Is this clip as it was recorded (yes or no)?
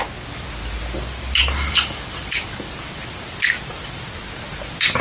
yes